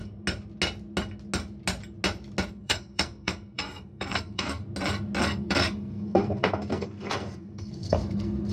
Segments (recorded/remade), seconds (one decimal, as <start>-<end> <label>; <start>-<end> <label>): 0.0-2.5 recorded; 2.5-4.6 remade; 4.6-5.2 recorded; 5.2-8.5 remade